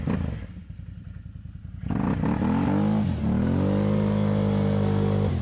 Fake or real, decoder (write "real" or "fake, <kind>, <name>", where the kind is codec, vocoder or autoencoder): real